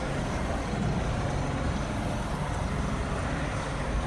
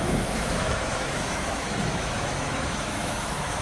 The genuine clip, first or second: first